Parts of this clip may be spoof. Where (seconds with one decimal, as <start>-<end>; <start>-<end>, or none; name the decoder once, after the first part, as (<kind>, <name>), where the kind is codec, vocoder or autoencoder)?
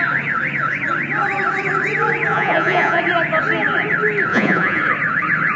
2.3-3.0 (vocoder, Vocos); 4.3-4.8